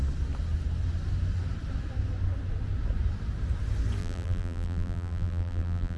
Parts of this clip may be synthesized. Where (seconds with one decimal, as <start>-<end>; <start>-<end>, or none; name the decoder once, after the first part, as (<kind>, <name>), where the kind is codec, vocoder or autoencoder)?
4.0-6.0 (vocoder, BigVGAN v2)